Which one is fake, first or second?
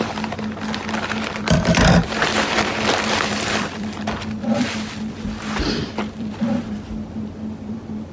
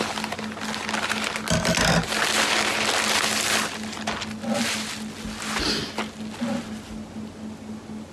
first